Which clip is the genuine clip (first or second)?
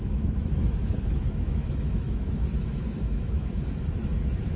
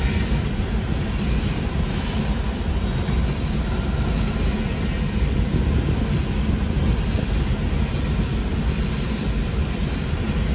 second